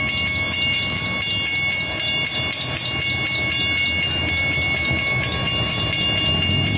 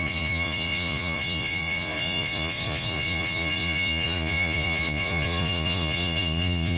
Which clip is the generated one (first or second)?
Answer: second